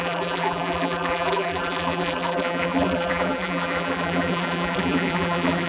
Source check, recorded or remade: remade